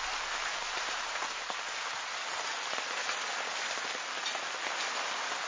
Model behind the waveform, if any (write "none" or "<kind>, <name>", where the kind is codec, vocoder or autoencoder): none